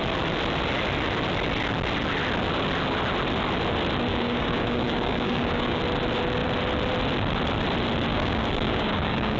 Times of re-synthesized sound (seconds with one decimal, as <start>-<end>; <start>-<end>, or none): 4.1-5.8; 8.1-9.4